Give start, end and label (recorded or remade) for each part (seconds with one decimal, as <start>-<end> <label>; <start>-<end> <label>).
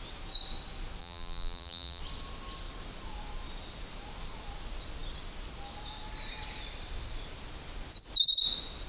0.0-1.0 recorded; 1.0-2.0 remade; 2.0-8.9 recorded